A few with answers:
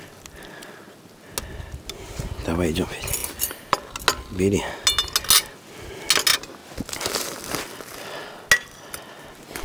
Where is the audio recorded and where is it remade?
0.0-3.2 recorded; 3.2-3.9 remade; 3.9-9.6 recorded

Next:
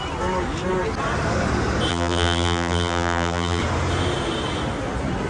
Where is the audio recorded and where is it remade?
0.0-1.9 recorded; 1.9-3.6 remade; 3.6-5.3 recorded